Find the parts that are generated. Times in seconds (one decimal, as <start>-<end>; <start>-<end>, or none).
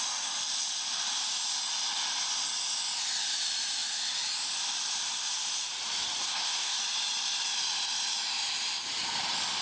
6.2-6.8